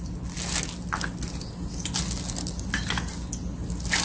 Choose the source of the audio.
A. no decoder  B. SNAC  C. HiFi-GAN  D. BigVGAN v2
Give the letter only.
A